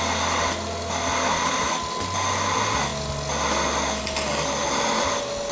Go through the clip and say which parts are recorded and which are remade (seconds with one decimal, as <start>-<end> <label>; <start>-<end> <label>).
0.0-5.5 recorded